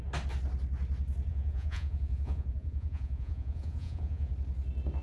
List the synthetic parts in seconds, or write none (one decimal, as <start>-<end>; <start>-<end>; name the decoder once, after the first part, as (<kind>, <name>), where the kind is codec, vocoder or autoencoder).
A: 1.3-4.3 (vocoder, Vocos)